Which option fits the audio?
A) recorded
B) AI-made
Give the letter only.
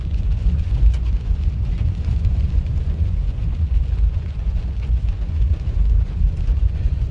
B